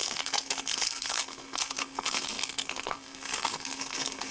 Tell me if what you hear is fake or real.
fake